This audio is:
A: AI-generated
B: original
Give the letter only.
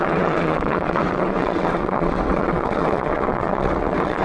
A